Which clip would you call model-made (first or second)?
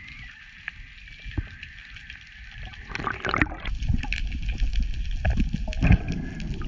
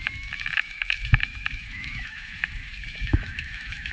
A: second